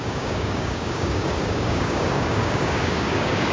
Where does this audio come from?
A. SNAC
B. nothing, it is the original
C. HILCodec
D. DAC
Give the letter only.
D